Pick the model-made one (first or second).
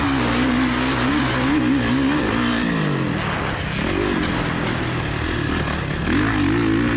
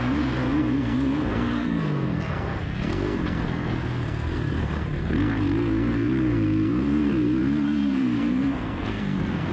second